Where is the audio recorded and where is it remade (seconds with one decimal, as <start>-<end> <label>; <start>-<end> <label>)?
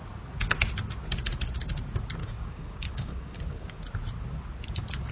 0.0-2.2 recorded; 2.2-3.8 remade; 3.8-5.1 recorded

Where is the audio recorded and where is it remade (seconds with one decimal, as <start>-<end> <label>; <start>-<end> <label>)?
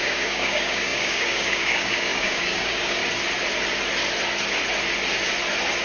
0.0-3.0 remade; 3.0-5.8 recorded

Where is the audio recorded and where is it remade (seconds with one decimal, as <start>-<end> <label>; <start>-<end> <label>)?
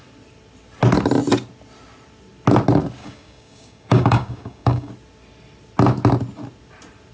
0.0-3.0 recorded; 3.0-4.9 remade; 4.9-7.1 recorded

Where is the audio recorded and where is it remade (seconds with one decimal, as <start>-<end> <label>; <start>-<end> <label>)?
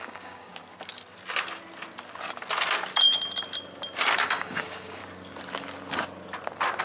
0.0-0.5 remade; 0.5-4.3 recorded; 4.3-5.0 remade; 5.0-6.8 recorded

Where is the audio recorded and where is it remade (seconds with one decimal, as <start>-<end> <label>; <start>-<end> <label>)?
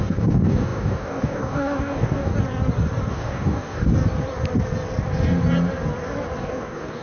0.0-2.3 remade; 2.3-3.1 recorded; 3.1-3.9 remade; 3.9-6.4 recorded; 6.4-7.0 remade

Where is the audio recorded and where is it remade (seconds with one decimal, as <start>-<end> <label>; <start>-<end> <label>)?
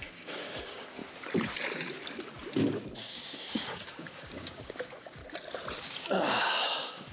0.0-1.0 remade; 1.0-3.1 recorded; 3.1-5.2 remade; 5.2-5.8 recorded; 5.8-7.1 remade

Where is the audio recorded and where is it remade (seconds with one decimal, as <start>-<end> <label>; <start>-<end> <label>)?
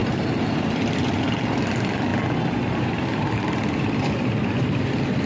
0.0-5.3 recorded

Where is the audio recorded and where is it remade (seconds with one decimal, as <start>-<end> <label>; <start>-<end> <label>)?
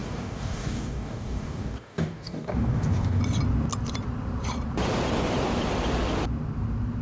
0.0-3.2 remade; 3.2-7.0 recorded